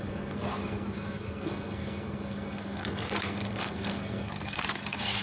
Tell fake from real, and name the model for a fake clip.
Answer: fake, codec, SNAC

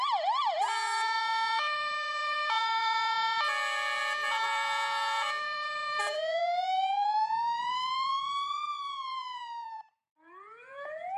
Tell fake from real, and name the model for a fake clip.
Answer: fake, vocoder, Vocos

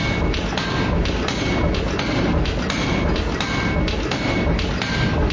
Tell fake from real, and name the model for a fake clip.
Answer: real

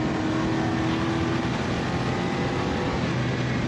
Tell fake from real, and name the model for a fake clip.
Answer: real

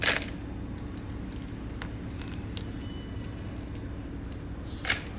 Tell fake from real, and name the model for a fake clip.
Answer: real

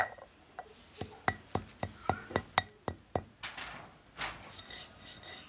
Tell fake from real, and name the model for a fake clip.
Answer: real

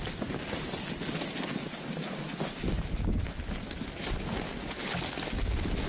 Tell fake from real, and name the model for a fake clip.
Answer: real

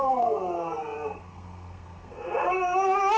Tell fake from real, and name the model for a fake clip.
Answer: fake, codec, SNAC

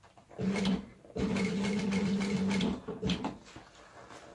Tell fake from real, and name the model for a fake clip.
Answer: real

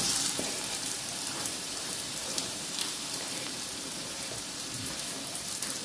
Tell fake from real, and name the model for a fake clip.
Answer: fake, vocoder, BigVGAN v2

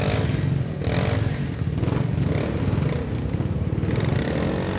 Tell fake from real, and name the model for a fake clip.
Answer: real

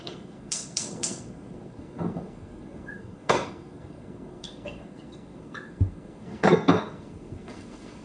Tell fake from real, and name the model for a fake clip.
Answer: fake, codec, SNAC